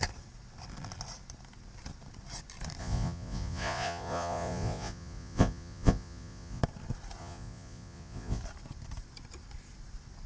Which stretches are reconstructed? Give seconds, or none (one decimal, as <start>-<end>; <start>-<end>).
2.8-6.6; 7.2-8.4